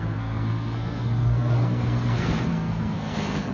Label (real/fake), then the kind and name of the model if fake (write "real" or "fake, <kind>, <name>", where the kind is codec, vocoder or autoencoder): fake, codec, SNAC